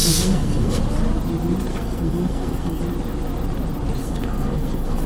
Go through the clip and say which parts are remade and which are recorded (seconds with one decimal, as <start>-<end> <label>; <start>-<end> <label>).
0.0-0.8 remade; 0.8-1.7 recorded; 1.7-2.8 remade; 2.8-4.0 recorded; 4.0-5.1 remade